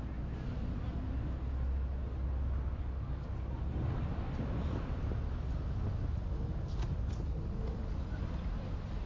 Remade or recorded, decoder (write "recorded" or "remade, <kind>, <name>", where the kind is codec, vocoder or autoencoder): recorded